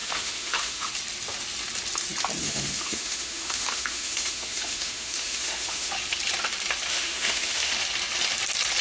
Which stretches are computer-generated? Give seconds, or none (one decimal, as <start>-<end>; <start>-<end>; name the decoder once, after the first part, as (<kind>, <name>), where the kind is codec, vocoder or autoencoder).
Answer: 0.0-0.9 (autoencoder, DAC-VAE); 2.4-5.9; 6.9-7.7